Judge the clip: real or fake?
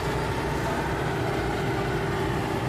real